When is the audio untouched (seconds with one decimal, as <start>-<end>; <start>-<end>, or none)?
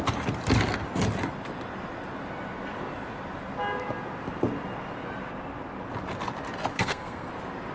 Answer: 0.0-6.7; 7.3-7.7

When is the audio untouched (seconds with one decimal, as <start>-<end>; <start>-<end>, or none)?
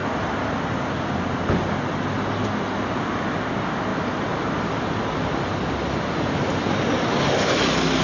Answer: 0.0-8.0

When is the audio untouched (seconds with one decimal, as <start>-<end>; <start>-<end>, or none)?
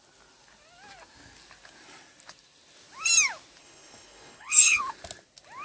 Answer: 0.0-3.6; 4.8-5.6